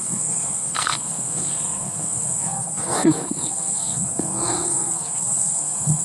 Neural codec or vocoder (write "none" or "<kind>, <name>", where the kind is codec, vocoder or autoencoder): codec, SNAC